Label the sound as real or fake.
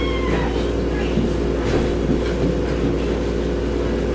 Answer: real